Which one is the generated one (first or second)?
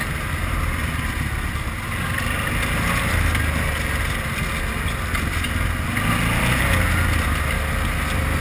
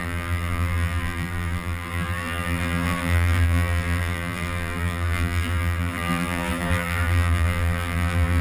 second